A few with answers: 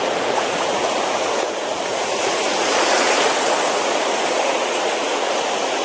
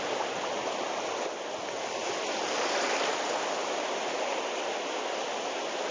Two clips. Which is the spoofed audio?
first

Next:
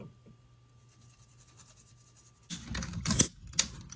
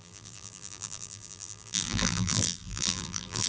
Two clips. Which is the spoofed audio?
second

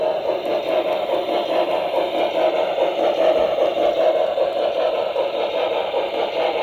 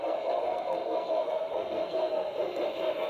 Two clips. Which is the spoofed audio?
second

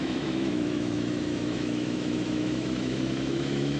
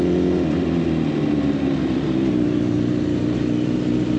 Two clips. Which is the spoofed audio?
first